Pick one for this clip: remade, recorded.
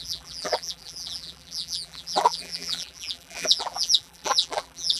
remade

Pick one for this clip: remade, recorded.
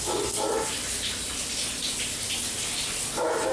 recorded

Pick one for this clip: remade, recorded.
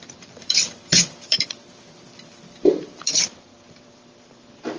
remade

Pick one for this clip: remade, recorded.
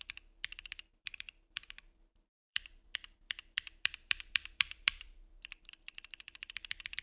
remade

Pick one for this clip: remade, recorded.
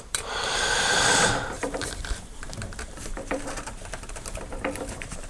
remade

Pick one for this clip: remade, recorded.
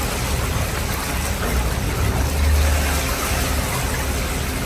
recorded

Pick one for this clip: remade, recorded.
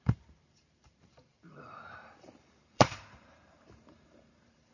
remade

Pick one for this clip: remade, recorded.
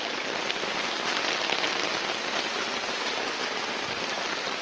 recorded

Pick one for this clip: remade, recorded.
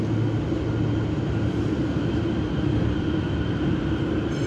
recorded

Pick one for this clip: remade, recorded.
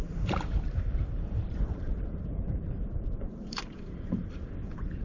remade